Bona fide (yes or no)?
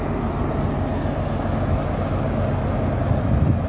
yes